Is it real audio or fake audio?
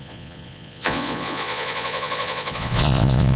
fake